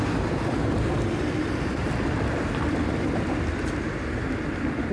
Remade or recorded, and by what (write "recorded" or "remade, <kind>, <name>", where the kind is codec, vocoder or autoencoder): remade, vocoder, BigVGAN v2